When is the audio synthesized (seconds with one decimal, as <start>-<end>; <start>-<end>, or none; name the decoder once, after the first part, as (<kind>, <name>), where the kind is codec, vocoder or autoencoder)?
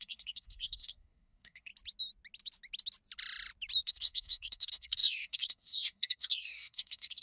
0.0-1.7 (codec, SNAC); 3.8-7.2